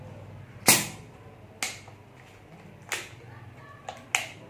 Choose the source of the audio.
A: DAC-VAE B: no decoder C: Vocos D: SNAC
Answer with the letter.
B